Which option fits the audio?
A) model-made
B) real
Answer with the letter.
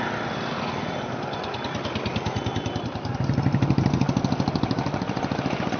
B